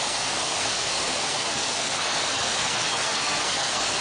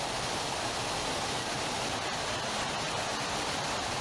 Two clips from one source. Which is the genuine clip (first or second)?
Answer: second